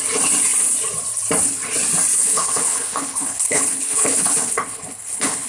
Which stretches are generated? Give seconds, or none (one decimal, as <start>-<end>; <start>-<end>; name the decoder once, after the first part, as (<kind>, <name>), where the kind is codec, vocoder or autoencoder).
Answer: 2.2-5.5 (codec, HILCodec)